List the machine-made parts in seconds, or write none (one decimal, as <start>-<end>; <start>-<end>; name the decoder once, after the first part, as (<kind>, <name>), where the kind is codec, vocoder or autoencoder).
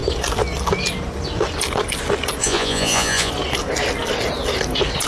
2.4-3.3 (vocoder, Vocos)